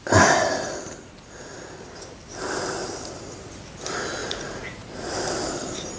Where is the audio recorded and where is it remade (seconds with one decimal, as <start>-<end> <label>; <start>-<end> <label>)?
0.0-4.2 recorded; 4.2-4.9 remade; 4.9-6.0 recorded